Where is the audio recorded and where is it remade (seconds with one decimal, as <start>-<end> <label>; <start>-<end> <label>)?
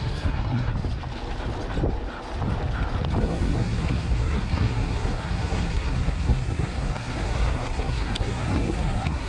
0.0-0.7 remade; 0.7-3.2 recorded; 3.2-9.3 remade